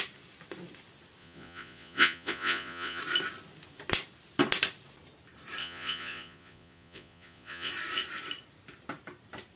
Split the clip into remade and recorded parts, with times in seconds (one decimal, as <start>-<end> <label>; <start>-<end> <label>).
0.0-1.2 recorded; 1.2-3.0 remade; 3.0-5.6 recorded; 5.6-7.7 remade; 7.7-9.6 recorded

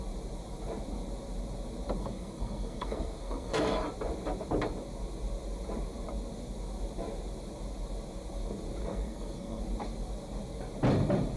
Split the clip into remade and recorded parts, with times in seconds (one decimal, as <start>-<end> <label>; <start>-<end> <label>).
0.0-2.0 recorded; 2.0-3.8 remade; 3.8-8.8 recorded; 8.8-9.6 remade; 9.6-11.4 recorded

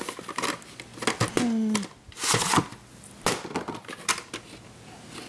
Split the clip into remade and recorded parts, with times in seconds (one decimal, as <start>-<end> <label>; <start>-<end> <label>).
0.0-5.3 recorded